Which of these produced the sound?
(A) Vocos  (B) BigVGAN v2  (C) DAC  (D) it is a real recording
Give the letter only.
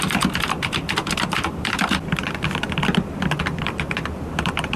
B